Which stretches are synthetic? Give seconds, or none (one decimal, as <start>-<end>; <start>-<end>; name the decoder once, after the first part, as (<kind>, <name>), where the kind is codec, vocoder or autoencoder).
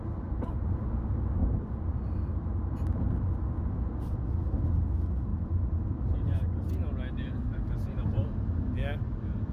5.3-6.7 (vocoder, BigVGAN v2)